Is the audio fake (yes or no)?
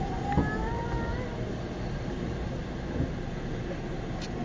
no